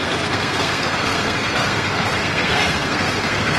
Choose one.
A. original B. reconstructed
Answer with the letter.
B